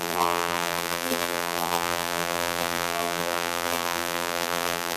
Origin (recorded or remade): remade